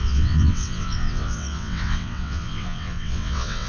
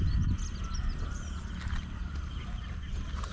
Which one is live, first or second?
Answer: second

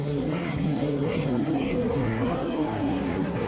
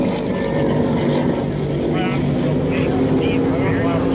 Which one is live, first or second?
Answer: second